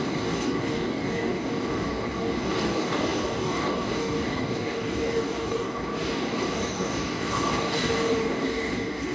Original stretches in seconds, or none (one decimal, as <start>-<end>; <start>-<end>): none

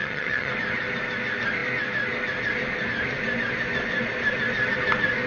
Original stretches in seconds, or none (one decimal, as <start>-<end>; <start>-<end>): 0.5-5.3

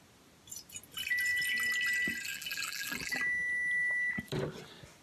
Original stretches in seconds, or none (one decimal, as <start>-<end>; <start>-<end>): 0.0-2.3; 3.2-5.0

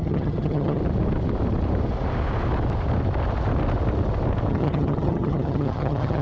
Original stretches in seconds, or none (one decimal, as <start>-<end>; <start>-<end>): 0.8-4.5

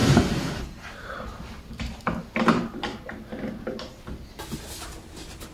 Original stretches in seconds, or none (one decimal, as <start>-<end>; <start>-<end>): 3.3-5.5

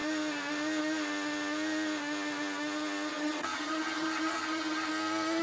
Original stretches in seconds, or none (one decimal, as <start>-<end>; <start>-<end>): 0.0-3.1; 4.9-5.4

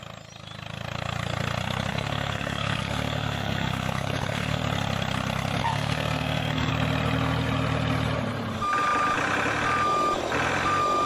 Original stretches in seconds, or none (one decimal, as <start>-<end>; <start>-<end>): 0.0-1.9; 4.6-5.6; 6.7-11.1

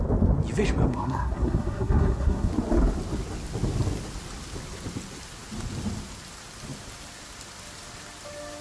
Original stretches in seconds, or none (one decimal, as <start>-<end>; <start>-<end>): 0.0-0.9; 2.5-8.6